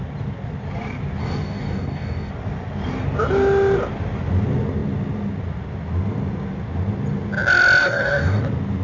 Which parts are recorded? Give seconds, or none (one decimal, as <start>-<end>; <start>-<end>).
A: 0.0-1.2; 2.3-7.8; 8.4-8.8